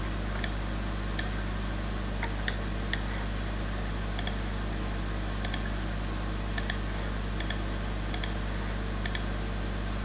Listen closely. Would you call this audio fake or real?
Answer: real